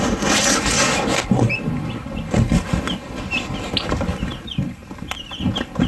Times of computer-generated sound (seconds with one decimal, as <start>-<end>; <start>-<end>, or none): none